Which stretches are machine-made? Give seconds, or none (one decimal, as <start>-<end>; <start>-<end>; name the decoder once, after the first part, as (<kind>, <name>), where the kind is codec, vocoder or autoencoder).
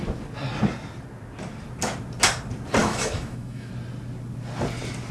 2.8-3.7 (autoencoder, DAC-VAE)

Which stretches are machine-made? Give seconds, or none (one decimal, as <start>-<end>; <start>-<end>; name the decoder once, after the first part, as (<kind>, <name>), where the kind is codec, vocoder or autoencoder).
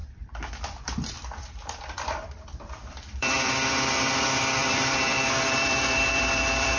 0.0-3.5 (vocoder, BigVGAN v2); 4.6-6.8